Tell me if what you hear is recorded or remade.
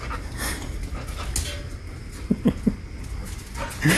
recorded